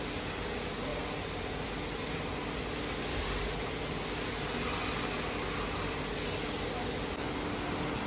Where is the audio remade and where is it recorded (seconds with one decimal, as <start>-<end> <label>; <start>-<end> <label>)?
0.0-8.1 recorded